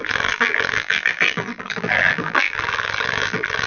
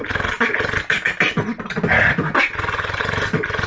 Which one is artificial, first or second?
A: first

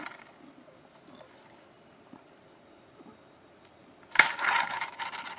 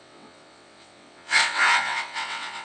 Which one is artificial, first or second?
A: second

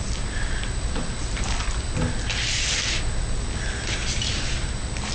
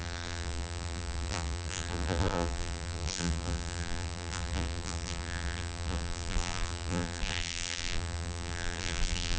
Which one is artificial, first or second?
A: second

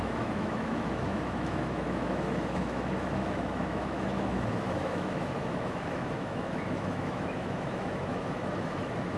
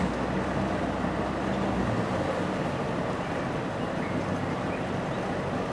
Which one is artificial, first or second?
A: first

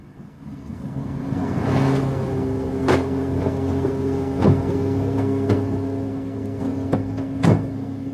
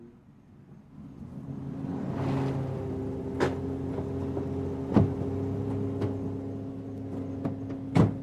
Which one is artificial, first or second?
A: first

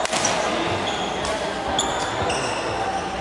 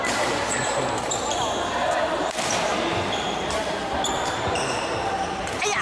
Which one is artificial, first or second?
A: second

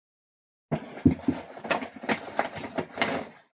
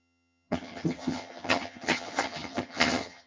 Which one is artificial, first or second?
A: second